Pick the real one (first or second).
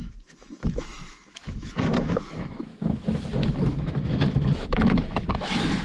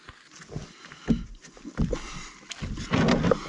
second